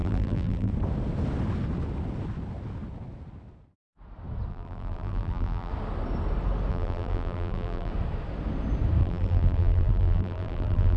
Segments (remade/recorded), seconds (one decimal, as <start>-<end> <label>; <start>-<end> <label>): 0.0-0.7 remade; 0.7-4.5 recorded; 4.5-5.7 remade; 5.7-6.7 recorded; 6.7-7.9 remade; 7.9-9.0 recorded; 9.0-11.0 remade